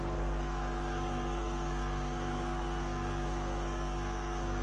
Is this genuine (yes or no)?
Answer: no